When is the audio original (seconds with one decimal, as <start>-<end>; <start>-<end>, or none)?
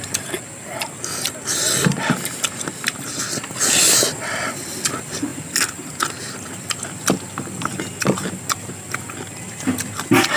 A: 0.0-10.4